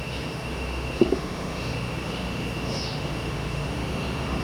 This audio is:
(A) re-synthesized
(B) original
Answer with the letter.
A